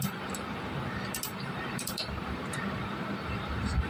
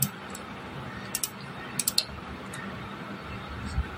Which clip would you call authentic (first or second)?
second